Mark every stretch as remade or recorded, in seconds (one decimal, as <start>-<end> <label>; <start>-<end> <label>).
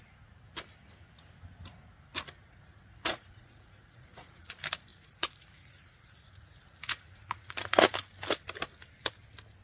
0.0-2.4 recorded; 2.4-4.5 remade; 4.5-4.9 recorded; 4.9-7.9 remade; 7.9-9.6 recorded